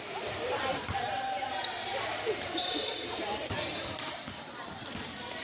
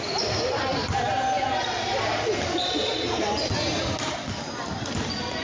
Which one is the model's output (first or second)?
first